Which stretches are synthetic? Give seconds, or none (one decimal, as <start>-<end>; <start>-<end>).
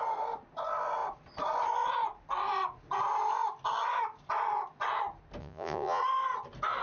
5.4-6.0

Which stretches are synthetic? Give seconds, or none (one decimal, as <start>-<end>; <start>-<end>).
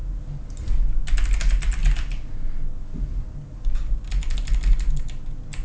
none